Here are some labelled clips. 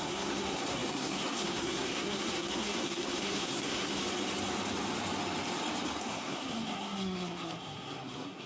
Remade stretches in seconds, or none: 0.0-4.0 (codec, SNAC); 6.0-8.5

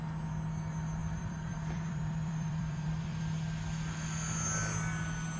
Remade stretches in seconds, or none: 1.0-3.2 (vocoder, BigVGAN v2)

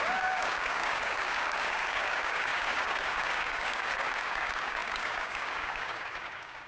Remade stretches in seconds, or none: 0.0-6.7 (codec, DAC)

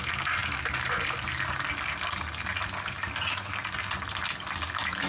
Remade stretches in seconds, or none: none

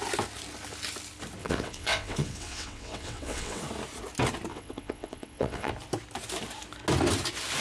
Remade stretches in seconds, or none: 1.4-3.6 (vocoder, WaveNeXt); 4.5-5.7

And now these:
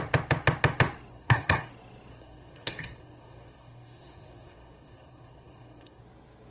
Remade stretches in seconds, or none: 1.1-1.7 (codec, SNAC); 2.1-6.0

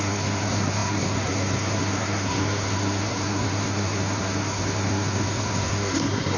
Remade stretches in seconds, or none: 0.0-6.4 (codec, SNAC)

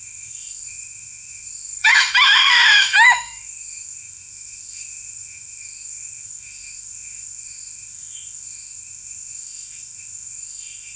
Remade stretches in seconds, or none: 0.0-11.0 (autoencoder, DAC-VAE)